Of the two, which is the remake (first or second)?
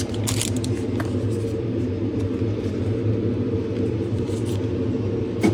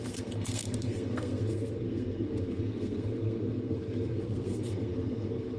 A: second